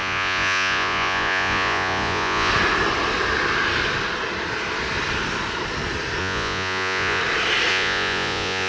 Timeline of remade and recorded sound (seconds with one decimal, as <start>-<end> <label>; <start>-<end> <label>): 0.0-2.5 remade; 2.5-6.2 recorded; 6.2-7.2 remade; 7.2-7.7 recorded; 7.7-8.7 remade